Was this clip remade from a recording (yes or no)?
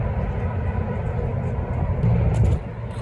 no